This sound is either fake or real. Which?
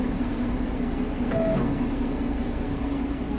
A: fake